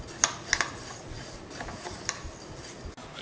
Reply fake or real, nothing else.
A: real